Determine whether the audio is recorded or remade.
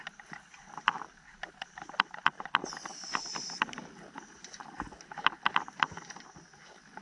recorded